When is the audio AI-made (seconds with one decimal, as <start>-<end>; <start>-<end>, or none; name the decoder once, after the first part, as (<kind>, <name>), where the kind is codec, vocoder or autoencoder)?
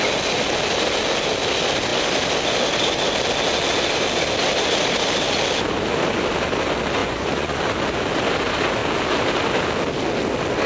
7.0-7.6 (vocoder, Vocos)